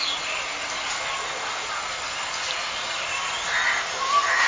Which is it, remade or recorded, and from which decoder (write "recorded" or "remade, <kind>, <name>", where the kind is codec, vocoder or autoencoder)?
recorded